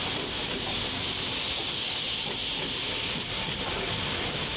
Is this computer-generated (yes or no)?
no